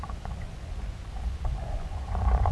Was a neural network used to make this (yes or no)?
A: yes